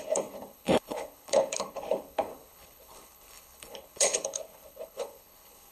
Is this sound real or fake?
fake